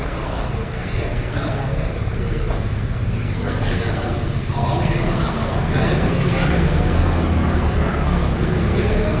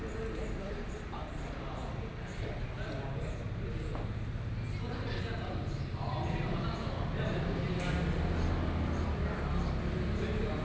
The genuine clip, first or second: second